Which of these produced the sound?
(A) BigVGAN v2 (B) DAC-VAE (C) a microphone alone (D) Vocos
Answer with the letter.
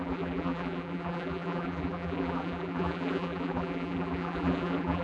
A